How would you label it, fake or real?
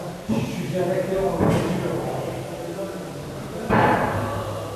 real